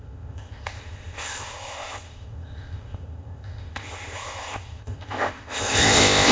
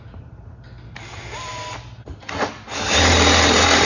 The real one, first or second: second